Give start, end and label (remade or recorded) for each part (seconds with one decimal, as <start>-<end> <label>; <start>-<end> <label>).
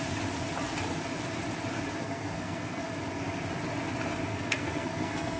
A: 0.0-2.0 recorded; 2.0-2.8 remade; 2.8-4.3 recorded; 4.3-5.4 remade